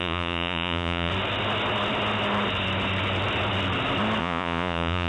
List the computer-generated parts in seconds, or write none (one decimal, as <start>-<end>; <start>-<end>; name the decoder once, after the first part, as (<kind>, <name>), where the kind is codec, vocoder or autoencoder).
0.0-1.1 (vocoder, Vocos); 4.2-5.1